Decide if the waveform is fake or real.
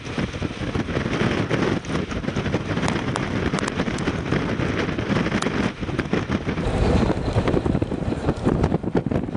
real